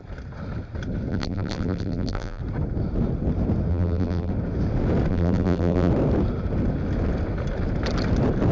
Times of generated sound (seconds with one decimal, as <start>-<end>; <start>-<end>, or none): 1.1-2.4; 3.7-4.3; 5.1-5.9